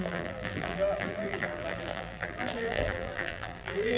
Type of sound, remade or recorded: remade